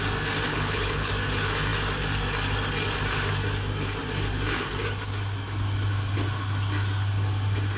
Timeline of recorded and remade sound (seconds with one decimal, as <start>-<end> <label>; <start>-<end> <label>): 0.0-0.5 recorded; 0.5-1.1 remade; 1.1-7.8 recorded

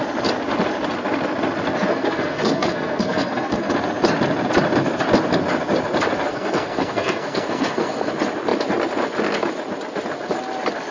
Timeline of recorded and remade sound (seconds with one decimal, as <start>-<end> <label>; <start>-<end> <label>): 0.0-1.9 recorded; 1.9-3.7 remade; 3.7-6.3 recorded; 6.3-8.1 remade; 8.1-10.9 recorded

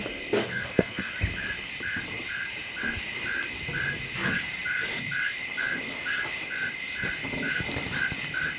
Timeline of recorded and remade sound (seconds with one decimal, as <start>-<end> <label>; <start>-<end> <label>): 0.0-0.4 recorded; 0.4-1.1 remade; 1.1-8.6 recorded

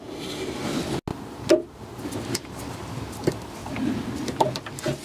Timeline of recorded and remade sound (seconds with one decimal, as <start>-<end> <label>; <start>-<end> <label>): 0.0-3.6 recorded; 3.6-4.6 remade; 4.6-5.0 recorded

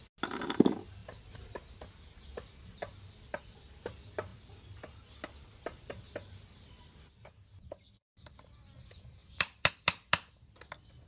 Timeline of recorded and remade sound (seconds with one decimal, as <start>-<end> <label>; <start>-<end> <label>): 0.0-11.1 recorded

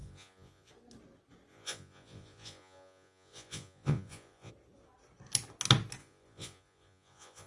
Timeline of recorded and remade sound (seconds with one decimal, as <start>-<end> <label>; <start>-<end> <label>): 0.0-0.7 remade; 0.7-1.5 recorded; 1.5-4.5 remade; 4.5-6.0 recorded; 6.0-7.5 remade